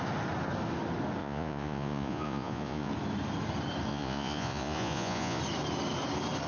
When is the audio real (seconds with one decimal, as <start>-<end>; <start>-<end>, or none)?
0.0-1.2; 2.9-3.9; 5.4-6.5